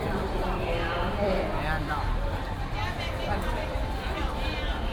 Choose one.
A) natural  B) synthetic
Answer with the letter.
B